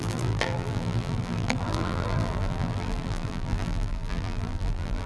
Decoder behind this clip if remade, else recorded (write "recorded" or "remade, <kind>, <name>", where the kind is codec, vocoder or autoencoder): remade, vocoder, BigVGAN v2